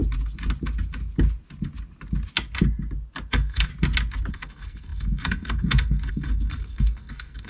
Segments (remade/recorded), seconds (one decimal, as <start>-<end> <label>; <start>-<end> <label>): 0.0-3.3 recorded; 3.3-3.7 remade; 3.7-4.3 recorded; 4.3-7.5 remade